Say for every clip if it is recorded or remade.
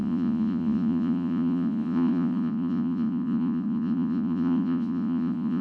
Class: remade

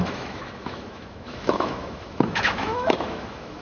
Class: remade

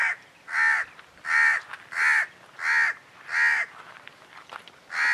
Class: recorded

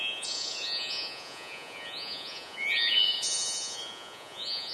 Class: remade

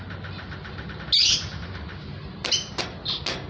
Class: recorded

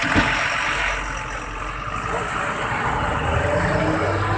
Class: recorded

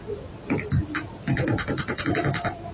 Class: recorded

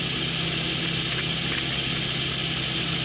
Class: recorded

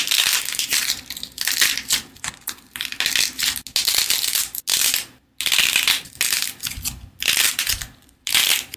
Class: recorded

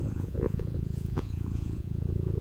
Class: remade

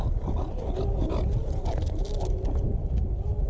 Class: recorded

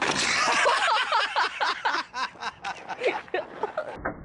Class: recorded